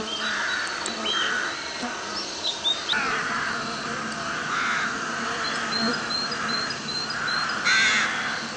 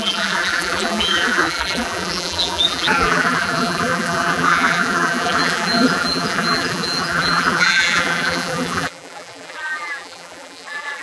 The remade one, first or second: second